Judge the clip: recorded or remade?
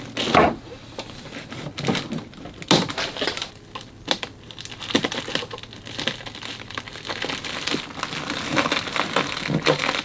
recorded